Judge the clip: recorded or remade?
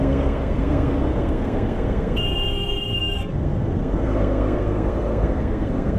remade